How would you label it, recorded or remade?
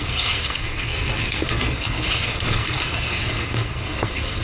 remade